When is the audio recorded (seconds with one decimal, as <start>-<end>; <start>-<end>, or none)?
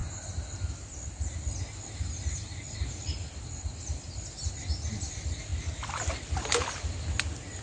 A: 0.0-7.6